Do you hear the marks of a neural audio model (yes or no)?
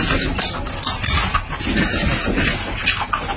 no